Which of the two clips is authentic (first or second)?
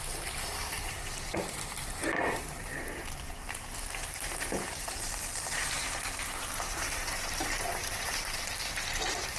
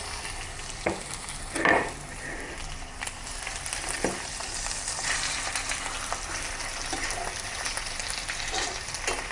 second